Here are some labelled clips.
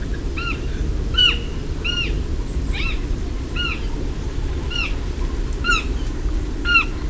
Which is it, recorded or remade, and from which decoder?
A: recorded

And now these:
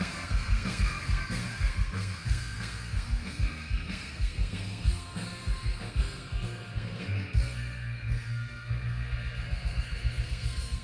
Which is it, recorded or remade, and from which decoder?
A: remade, codec, SNAC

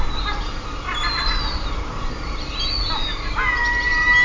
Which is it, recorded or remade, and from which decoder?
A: recorded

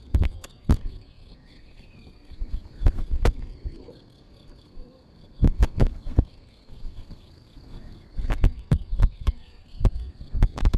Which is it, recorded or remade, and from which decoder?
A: remade, codec, SNAC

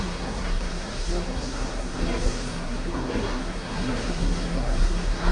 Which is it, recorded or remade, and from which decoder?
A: remade, codec, SNAC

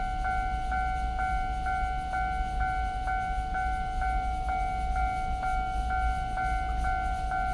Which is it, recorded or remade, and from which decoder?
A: recorded